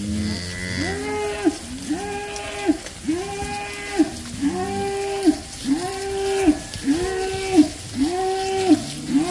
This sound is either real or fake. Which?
real